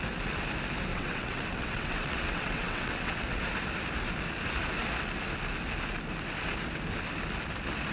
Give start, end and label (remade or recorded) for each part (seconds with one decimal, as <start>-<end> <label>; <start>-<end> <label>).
0.0-0.9 recorded; 0.9-3.4 remade; 3.4-7.9 recorded